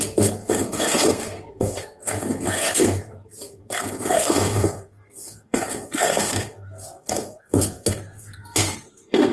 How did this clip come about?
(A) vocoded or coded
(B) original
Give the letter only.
A